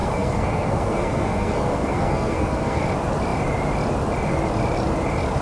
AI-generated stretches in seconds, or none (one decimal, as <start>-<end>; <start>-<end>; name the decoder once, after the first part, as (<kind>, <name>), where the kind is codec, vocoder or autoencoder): 0.0-2.8 (codec, SNAC)